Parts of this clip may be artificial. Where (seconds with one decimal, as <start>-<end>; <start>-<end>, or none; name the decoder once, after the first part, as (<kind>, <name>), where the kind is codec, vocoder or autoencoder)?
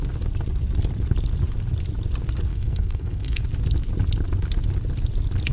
2.5-3.4 (codec, SNAC)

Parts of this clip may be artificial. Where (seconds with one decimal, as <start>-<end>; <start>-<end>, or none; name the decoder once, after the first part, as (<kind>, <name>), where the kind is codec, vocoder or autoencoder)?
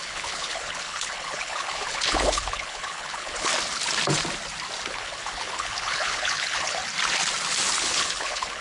0.0-3.5 (codec, HILCodec); 4.9-6.8; 7.8-8.6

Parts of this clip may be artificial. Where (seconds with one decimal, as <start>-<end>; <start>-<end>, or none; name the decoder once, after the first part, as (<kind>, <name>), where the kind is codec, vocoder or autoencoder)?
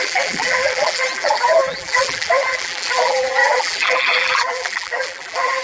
0.0-5.6 (vocoder, BigVGAN v2)